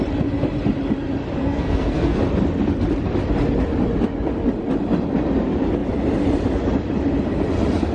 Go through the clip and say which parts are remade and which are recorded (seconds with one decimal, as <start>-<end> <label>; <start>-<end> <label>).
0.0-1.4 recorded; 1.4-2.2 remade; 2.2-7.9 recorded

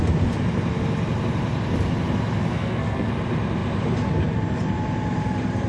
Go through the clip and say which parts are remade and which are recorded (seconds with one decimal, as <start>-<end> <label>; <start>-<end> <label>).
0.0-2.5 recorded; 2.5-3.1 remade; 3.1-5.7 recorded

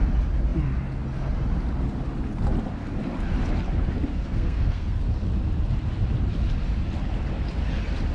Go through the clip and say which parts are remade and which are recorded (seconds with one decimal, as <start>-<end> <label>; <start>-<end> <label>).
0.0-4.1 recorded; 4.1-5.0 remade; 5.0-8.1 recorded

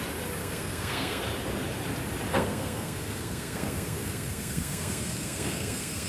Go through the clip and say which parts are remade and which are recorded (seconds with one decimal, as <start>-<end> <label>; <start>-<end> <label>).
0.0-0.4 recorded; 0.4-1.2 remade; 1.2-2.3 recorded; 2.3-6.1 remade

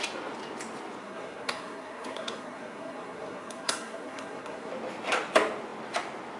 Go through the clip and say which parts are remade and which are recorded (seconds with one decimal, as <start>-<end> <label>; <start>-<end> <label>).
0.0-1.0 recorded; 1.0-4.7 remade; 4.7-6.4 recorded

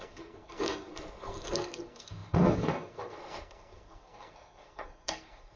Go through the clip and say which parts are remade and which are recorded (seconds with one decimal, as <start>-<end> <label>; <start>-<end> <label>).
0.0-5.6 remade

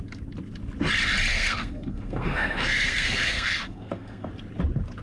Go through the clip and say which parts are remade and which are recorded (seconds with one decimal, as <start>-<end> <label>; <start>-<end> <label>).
0.0-1.3 recorded; 1.3-4.3 remade; 4.3-5.0 recorded

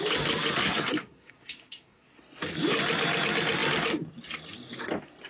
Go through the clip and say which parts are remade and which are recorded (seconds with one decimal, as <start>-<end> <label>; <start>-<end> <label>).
0.0-0.6 recorded; 0.6-2.2 remade; 2.2-5.3 recorded